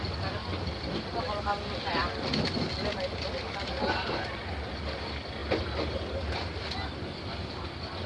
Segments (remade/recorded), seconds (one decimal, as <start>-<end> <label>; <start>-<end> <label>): 0.0-8.1 recorded